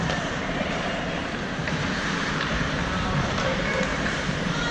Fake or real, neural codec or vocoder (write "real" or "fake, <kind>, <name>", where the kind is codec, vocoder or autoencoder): fake, vocoder, BigVGAN v2